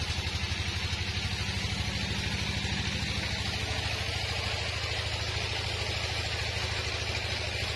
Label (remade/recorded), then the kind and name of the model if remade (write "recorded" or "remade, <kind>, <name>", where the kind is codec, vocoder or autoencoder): recorded